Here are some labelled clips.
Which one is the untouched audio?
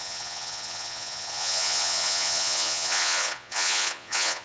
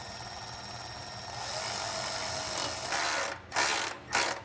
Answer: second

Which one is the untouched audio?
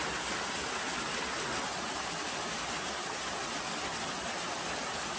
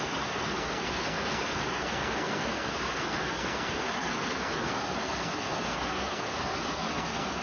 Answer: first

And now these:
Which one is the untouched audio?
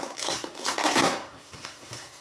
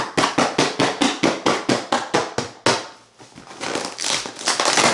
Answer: second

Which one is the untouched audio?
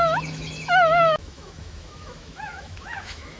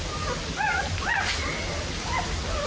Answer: second